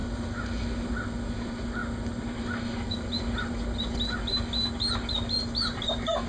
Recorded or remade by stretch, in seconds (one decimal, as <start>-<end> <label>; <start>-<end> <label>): 0.0-6.3 recorded